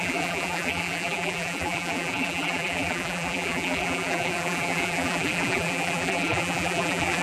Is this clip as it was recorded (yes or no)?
no